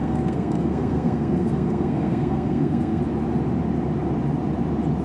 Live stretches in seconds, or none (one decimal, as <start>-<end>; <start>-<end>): 3.0-5.0